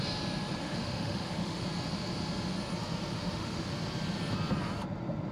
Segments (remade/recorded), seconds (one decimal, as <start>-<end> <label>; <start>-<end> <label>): 0.0-0.6 recorded; 0.6-1.6 remade; 1.6-3.1 recorded; 3.1-3.7 remade; 3.7-5.3 recorded